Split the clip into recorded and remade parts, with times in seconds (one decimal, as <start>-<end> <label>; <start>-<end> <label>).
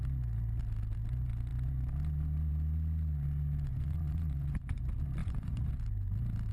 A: 0.0-3.7 recorded; 3.7-4.8 remade; 4.8-5.2 recorded; 5.2-5.7 remade; 5.7-6.5 recorded